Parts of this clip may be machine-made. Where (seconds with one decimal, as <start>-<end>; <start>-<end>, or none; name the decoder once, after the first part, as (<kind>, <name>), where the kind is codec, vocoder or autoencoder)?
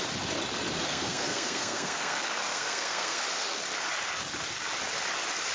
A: 0.8-3.2 (codec, SNAC)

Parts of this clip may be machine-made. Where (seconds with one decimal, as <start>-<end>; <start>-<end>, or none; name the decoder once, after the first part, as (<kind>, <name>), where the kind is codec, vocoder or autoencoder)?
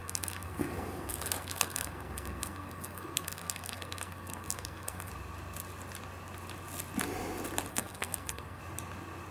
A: 0.0-5.1 (codec, SNAC); 7.7-8.6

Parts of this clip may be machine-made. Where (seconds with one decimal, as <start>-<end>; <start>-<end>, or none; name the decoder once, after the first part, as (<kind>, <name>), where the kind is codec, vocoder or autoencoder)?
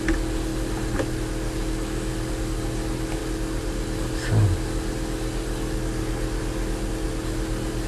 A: none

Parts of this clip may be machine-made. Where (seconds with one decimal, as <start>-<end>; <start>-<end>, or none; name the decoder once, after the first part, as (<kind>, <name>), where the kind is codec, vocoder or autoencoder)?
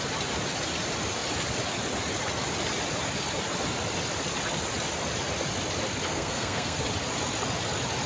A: 6.1-6.8 (codec, SNAC)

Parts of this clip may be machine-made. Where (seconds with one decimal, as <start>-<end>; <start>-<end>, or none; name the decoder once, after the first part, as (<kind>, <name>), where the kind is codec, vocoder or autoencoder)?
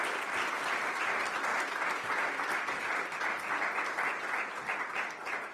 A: none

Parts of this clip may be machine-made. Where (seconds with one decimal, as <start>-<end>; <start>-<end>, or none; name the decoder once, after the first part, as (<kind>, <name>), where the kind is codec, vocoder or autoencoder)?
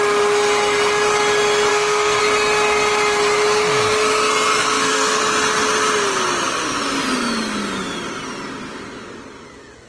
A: 1.7-2.2 (codec, SNAC); 4.6-5.2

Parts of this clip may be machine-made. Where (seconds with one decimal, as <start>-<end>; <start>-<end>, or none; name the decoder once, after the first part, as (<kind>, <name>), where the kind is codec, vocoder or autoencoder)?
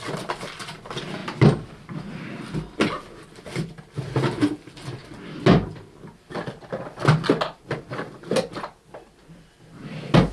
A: none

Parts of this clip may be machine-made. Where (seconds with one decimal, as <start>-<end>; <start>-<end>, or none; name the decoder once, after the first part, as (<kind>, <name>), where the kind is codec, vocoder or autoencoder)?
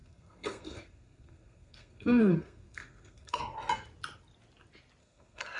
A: 0.0-3.4 (codec, SNAC); 5.0-5.6